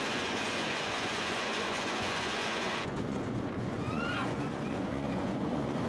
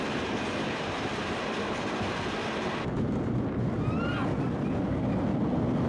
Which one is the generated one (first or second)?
first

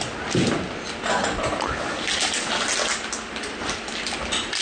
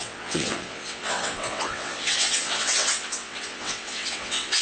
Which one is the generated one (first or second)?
second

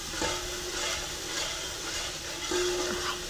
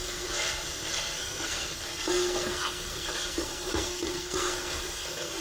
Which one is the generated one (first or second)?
second